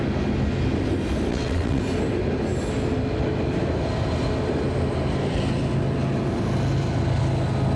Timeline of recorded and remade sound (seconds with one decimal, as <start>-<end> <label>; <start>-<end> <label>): 0.0-1.3 recorded; 1.3-1.8 remade; 1.8-7.8 recorded